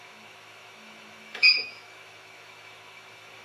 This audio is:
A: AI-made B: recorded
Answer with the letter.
A